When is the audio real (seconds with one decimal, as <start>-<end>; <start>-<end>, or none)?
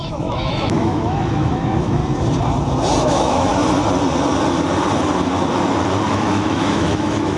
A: 2.0-3.0; 3.5-6.1